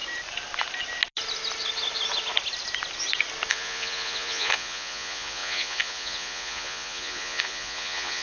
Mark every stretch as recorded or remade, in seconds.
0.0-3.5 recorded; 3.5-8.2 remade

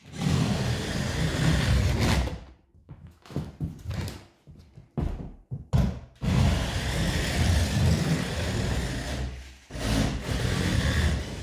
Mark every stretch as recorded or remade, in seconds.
0.0-2.8 recorded; 2.8-3.5 remade; 3.5-11.4 recorded

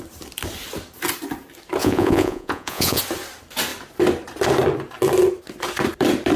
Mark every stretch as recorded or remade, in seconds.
0.0-1.8 recorded; 1.8-3.0 remade; 3.0-6.4 recorded

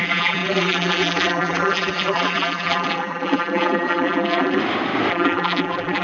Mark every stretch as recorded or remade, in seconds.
0.0-4.6 remade; 4.6-5.1 recorded; 5.1-6.0 remade

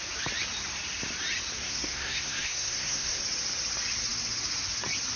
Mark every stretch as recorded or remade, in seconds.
0.0-1.7 recorded; 1.7-3.2 remade; 3.2-5.2 recorded

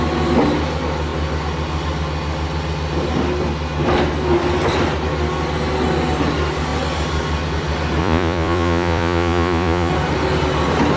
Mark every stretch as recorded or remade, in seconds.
0.0-8.0 recorded; 8.0-9.9 remade; 9.9-11.0 recorded